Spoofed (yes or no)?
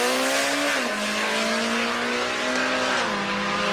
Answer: no